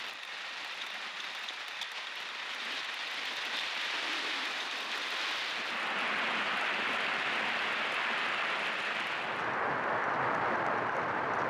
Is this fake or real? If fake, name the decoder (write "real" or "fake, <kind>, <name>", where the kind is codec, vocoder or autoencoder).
real